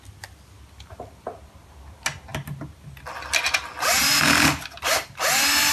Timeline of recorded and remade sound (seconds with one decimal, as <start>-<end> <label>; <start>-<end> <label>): 0.0-5.7 recorded